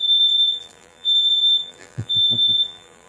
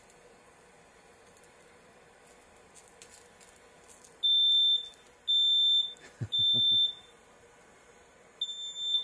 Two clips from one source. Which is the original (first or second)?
second